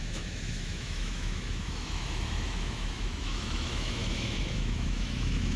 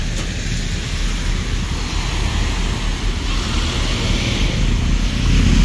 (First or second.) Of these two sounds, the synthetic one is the first